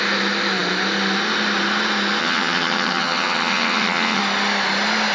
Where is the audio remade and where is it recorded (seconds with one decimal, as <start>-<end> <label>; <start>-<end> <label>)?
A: 0.0-2.2 recorded; 2.2-4.2 remade; 4.2-5.1 recorded